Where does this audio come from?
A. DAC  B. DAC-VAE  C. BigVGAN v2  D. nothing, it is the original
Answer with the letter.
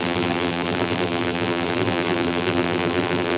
C